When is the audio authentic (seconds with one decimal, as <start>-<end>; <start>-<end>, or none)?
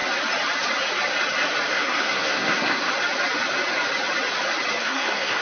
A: 0.0-1.7; 2.9-4.8